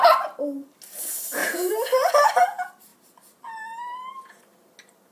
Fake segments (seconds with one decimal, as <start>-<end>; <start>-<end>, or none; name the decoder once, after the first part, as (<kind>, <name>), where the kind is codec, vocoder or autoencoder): 1.4-2.1 (vocoder, BigVGAN v2)